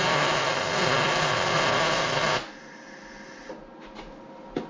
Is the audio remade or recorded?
recorded